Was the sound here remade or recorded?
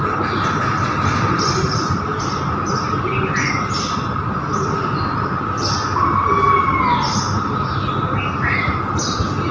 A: recorded